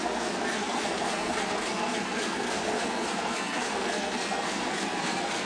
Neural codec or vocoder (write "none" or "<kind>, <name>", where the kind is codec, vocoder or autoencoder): codec, SNAC